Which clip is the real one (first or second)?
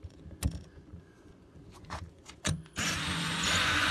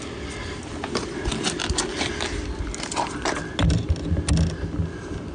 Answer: second